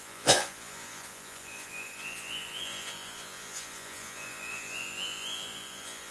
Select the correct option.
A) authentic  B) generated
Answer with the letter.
B